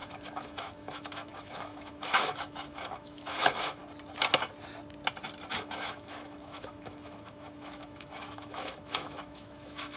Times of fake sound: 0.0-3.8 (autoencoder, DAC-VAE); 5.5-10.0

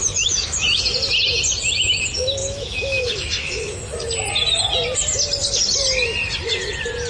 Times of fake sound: 0.0-0.8 (autoencoder, DAC-VAE); 2.4-4.1

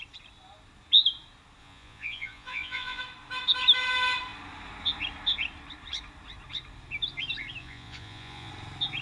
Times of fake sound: 1.6-3.0 (vocoder, Vocos); 7.6-8.5